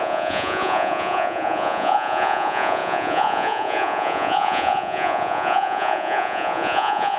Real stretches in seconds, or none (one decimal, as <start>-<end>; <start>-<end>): none

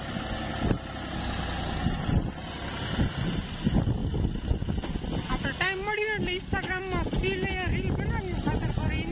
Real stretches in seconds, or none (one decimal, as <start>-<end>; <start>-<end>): 0.0-9.1

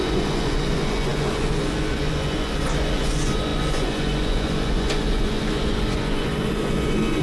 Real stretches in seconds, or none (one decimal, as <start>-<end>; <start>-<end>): none

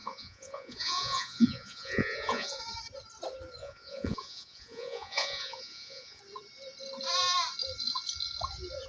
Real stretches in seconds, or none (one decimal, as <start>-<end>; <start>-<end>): 2.6-3.6; 6.2-8.9

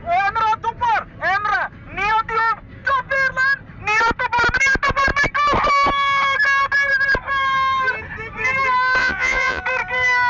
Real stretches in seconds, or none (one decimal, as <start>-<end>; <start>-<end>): 0.0-9.0; 9.6-10.3